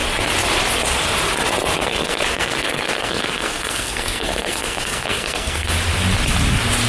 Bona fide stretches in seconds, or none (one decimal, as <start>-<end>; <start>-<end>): 0.0-1.8; 5.7-6.9